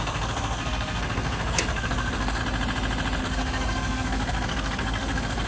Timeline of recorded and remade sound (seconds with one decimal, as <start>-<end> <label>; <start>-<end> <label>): 0.0-2.4 remade; 2.4-3.2 recorded; 3.2-5.5 remade